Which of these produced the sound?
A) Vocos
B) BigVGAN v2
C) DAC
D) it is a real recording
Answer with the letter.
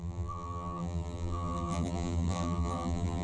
B